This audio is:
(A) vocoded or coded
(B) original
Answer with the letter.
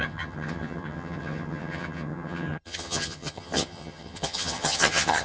A